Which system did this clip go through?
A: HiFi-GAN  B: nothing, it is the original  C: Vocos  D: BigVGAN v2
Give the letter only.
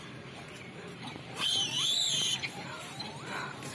D